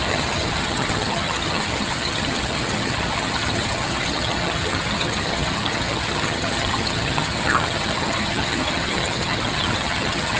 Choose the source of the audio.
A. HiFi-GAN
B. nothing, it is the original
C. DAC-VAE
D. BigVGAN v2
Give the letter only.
A